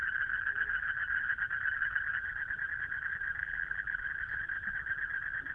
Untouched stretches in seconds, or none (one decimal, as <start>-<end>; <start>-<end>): 0.0-3.4; 4.0-5.5